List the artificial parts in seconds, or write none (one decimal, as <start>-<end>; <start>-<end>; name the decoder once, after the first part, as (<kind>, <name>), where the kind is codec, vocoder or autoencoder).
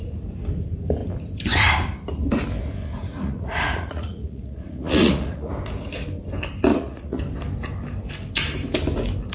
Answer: 2.8-5.5 (vocoder, Vocos); 6.7-7.2